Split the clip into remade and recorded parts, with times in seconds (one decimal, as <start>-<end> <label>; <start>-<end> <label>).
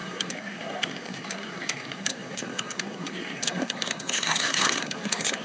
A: 0.0-5.4 remade